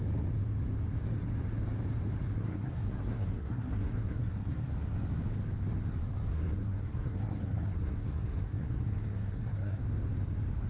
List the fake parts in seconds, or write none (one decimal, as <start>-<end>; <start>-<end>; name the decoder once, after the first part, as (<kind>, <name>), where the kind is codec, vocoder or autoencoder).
2.4-4.7 (codec, SNAC); 6.3-9.8